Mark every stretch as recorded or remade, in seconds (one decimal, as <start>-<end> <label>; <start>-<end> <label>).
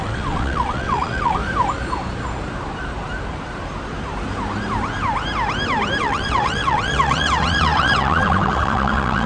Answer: 0.0-1.4 remade; 1.4-6.0 recorded; 6.0-9.3 remade